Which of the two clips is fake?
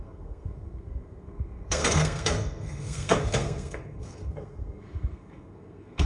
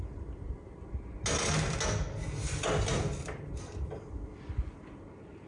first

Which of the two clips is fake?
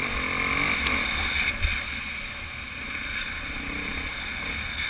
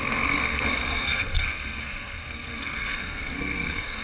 second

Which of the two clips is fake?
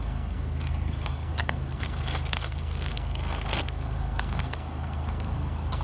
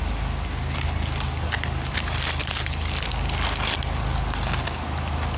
first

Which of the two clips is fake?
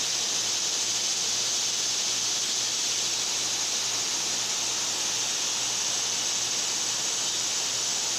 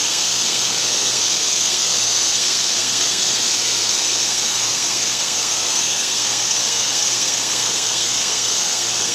second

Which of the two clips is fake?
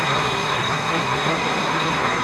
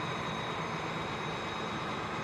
first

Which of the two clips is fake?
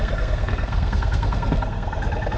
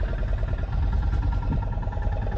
first